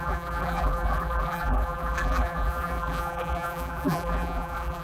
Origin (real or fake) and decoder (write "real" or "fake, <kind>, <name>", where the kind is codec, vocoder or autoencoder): fake, vocoder, BigVGAN v2